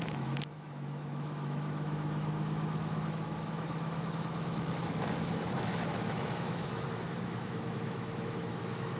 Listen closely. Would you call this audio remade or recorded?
remade